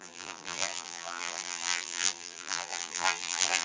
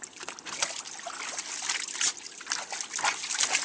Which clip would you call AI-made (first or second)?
first